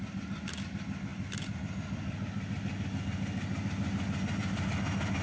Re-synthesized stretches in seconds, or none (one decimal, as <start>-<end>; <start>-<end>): none